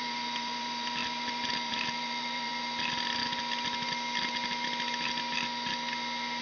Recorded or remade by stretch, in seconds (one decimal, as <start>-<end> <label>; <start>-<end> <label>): 0.0-2.5 remade; 2.5-6.4 recorded